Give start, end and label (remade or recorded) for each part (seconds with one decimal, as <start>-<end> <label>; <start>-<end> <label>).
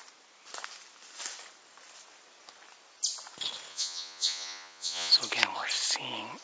0.0-3.7 recorded; 3.7-5.1 remade; 5.1-6.4 recorded